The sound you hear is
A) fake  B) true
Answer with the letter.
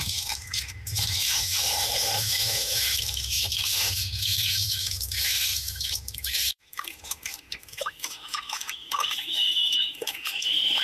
A